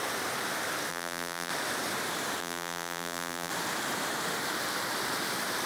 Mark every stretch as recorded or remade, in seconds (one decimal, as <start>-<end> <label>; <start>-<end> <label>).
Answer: 0.0-0.9 recorded; 0.9-1.5 remade; 1.5-2.4 recorded; 2.4-3.5 remade; 3.5-5.7 recorded